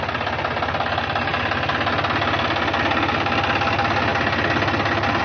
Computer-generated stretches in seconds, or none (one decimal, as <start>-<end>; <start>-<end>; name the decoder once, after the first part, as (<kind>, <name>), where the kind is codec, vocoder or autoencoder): none